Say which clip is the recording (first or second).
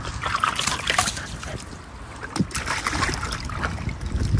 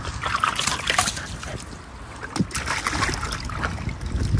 second